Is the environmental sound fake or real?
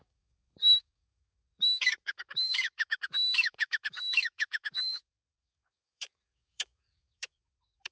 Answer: fake